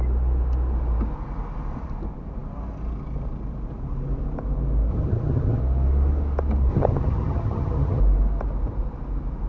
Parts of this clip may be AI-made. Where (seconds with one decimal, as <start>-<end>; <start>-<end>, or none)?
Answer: 4.9-5.6; 6.7-8.0